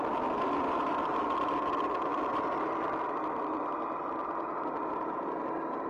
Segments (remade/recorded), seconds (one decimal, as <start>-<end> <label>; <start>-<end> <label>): 0.0-5.9 recorded